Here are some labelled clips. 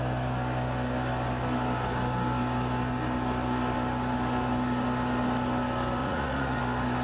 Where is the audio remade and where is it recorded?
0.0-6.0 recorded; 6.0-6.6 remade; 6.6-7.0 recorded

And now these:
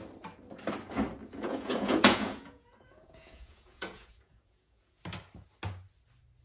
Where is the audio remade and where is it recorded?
0.0-1.2 recorded; 1.2-5.0 remade; 5.0-6.4 recorded

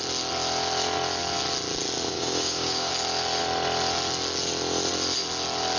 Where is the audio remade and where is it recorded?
0.0-2.1 recorded; 2.1-2.9 remade; 2.9-5.8 recorded

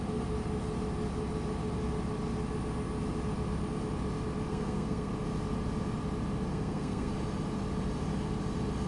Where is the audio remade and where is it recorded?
0.0-4.5 recorded; 4.5-5.1 remade; 5.1-6.5 recorded; 6.5-7.1 remade; 7.1-8.9 recorded

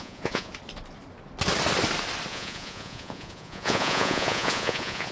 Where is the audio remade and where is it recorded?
0.0-0.5 remade; 0.5-2.3 recorded; 2.3-5.1 remade

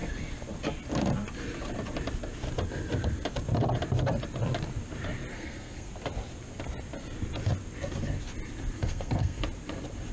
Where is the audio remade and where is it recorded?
0.0-5.3 recorded; 5.3-5.9 remade; 5.9-8.8 recorded; 8.8-9.4 remade; 9.4-10.1 recorded

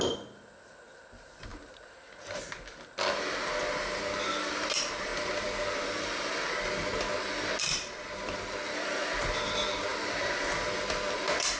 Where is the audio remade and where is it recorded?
0.0-1.5 remade; 1.5-4.3 recorded; 4.3-6.8 remade; 6.8-7.6 recorded; 7.6-11.6 remade

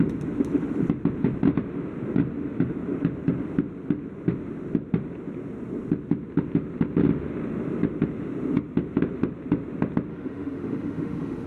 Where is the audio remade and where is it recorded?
0.0-10.1 recorded; 10.1-11.5 remade